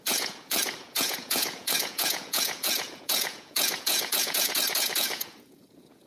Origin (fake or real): fake